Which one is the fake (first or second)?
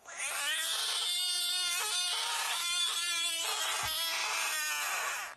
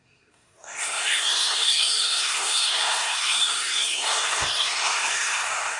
second